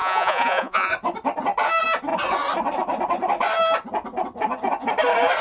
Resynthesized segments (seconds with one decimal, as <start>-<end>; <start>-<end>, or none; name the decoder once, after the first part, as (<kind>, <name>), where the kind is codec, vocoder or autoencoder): 0.0-0.9 (vocoder, Vocos)